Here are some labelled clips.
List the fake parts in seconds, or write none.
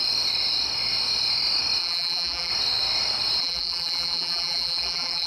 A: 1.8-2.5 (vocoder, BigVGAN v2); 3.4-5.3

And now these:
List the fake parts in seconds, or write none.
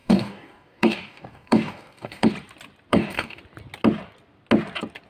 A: 0.0-2.3 (codec, DAC); 2.9-3.4